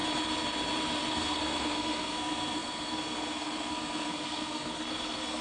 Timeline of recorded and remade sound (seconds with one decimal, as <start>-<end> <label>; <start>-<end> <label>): 0.0-1.1 recorded; 1.1-5.4 remade